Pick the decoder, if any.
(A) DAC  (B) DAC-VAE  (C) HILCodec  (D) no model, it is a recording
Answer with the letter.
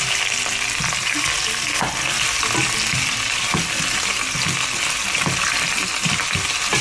D